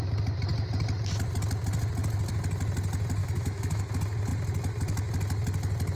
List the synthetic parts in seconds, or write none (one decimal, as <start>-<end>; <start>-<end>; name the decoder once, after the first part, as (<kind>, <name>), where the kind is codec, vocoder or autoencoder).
3.2-3.8 (autoencoder, DAC-VAE)